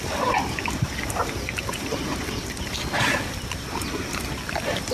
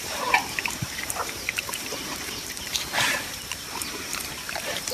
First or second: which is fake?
second